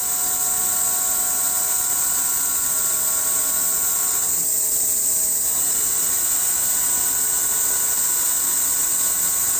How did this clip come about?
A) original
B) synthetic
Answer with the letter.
A